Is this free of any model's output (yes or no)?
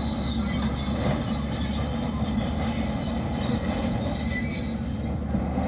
yes